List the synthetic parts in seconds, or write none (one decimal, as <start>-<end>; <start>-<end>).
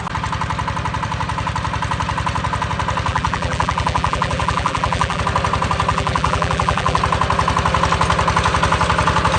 3.1-5.2; 5.9-7.0